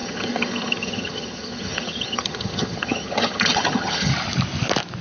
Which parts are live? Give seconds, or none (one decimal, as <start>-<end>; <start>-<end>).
4.1-5.0

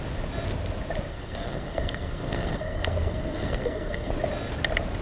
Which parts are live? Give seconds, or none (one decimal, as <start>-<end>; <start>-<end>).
0.0-1.1; 4.1-5.0

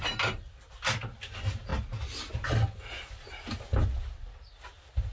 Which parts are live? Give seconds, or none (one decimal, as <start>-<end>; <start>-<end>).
0.0-5.1

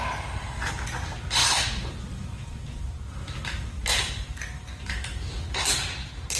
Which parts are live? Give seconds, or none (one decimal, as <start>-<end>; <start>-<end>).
0.0-1.4; 3.4-6.4

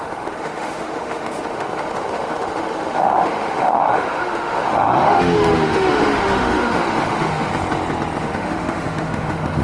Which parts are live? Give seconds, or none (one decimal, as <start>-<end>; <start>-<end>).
7.5-8.2

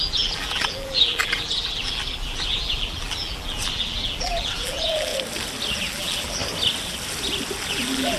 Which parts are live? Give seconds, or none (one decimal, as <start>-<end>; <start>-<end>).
5.1-5.7; 6.4-7.7

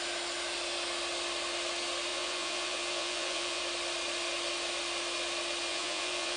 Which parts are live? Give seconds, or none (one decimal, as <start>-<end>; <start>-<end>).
0.0-2.1; 3.6-5.7